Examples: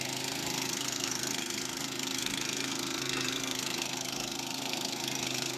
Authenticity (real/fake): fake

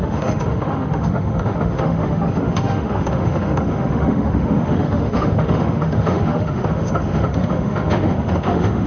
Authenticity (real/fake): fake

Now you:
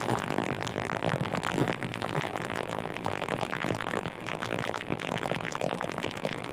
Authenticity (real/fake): fake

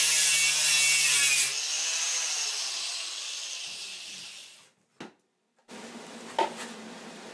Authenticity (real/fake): real